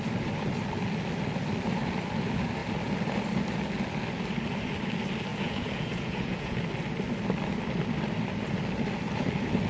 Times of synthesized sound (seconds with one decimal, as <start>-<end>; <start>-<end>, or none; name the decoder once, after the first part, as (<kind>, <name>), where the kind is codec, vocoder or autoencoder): 5.3-6.6 (vocoder, Vocos)